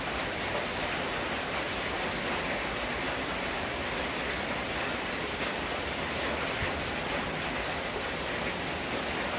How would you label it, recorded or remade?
recorded